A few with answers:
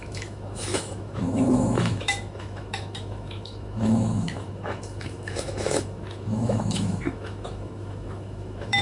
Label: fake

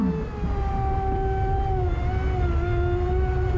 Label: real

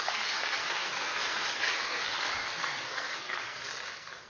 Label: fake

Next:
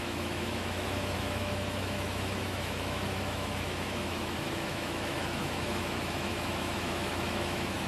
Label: fake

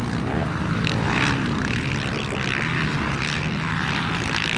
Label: real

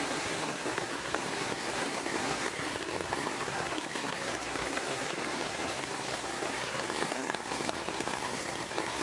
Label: fake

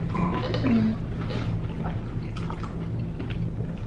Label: real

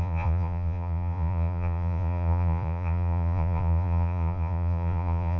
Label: fake